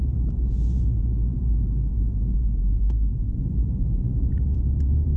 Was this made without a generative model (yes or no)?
no